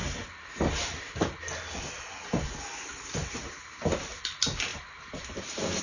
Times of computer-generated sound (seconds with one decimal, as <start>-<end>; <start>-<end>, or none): 4.7-5.8